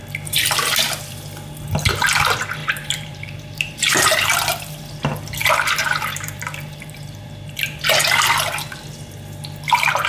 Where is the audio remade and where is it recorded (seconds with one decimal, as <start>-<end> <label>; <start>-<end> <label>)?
0.0-2.6 recorded; 2.6-4.8 remade; 4.8-5.4 recorded; 5.4-7.6 remade; 7.6-10.1 recorded